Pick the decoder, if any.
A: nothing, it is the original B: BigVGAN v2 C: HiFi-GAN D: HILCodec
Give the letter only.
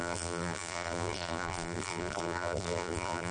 B